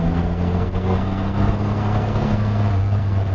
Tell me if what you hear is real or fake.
fake